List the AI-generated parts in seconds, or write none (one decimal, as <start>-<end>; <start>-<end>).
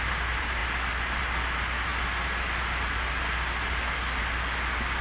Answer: none